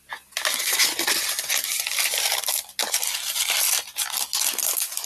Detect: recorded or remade recorded